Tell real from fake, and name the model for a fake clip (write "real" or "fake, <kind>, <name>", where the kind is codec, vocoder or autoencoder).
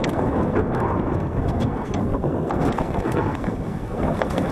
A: fake, codec, SNAC